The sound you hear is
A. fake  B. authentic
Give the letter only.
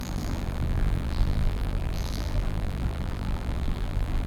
A